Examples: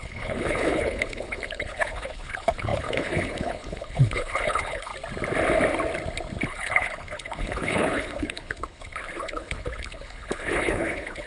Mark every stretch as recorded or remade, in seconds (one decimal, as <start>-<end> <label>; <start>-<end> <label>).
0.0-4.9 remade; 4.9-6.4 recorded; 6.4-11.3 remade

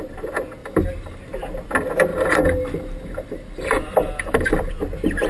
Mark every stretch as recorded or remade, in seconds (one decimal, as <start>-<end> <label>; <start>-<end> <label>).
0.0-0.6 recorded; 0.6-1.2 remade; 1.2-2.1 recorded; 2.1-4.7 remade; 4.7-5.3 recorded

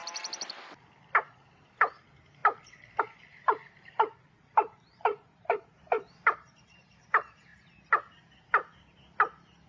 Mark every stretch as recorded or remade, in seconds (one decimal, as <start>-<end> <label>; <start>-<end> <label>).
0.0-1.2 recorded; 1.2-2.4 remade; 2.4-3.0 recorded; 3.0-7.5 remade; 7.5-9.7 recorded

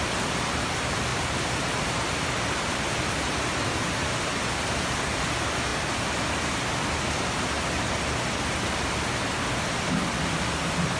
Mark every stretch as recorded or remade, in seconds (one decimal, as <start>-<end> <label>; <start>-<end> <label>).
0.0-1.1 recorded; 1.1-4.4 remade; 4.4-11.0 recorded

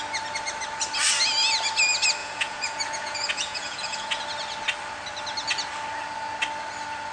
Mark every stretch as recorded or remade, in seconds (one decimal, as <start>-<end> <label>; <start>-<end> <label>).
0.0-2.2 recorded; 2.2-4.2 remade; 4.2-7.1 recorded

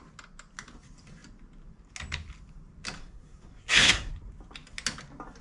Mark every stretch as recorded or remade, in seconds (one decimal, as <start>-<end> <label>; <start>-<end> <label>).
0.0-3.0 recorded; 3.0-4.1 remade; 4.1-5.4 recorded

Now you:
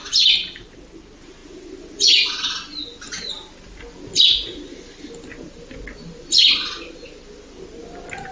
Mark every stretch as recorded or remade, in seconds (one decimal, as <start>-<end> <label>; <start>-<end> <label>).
0.0-8.3 recorded